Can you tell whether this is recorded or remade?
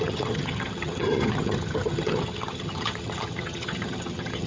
remade